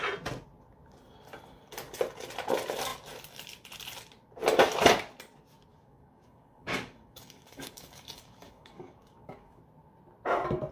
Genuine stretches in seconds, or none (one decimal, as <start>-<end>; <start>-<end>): 0.0-5.7; 9.6-10.7